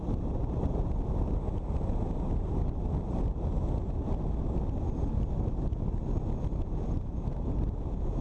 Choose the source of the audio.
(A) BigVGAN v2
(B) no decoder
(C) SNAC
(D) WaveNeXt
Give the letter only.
B